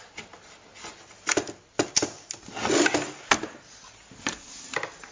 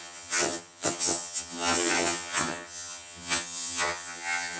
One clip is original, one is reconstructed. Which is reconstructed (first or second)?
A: second